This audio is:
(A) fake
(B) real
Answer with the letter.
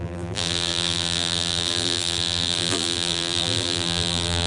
A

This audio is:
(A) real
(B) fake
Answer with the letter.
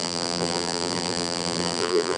B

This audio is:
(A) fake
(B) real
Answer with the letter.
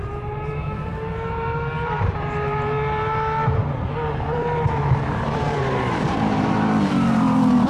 A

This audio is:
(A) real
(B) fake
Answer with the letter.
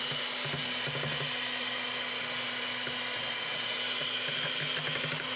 A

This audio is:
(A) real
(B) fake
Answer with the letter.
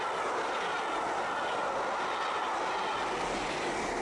A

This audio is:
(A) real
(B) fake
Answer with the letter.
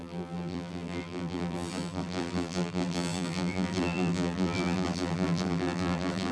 B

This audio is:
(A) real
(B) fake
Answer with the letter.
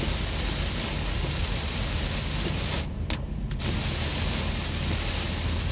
A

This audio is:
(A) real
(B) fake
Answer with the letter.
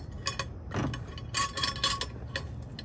A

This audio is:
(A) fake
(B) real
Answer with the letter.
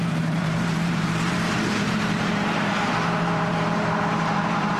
A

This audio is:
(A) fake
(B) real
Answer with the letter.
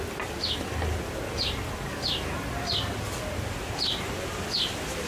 B